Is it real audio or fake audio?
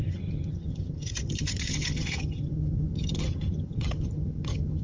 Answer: fake